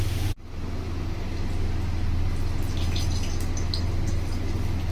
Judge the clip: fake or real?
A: real